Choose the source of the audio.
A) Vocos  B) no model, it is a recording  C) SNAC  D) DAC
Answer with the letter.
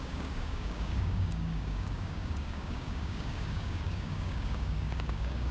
D